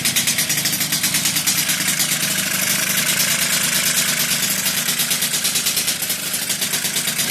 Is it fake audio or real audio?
real